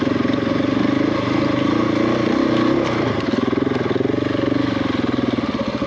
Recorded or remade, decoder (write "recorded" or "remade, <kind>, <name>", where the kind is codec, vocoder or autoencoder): recorded